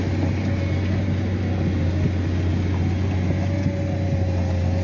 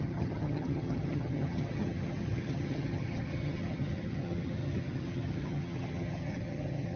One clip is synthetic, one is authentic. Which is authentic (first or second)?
first